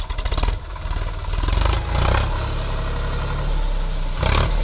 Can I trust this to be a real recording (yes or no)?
yes